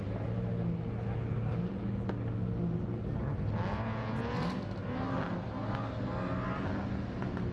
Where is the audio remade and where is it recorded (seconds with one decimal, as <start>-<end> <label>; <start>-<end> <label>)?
0.0-7.5 recorded